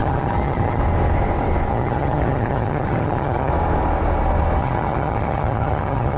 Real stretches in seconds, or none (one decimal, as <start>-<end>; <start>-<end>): 0.8-1.7; 3.5-4.6